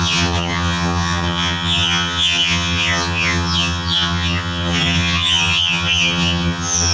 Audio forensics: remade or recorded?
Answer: remade